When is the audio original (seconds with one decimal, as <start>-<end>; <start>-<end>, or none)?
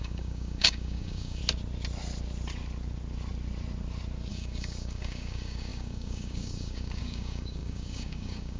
1.4-4.3